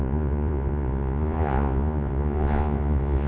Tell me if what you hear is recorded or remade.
remade